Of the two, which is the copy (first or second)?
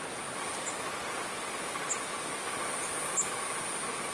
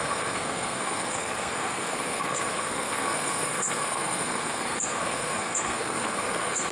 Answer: second